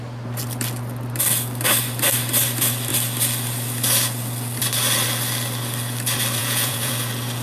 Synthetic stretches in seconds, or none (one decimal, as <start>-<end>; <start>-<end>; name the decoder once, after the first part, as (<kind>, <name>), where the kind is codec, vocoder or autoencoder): 6.4-6.9 (vocoder, Vocos)